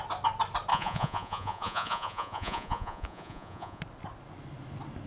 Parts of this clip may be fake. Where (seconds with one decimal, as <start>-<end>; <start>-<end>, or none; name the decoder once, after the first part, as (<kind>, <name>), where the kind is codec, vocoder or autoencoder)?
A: 0.7-3.8 (vocoder, Vocos)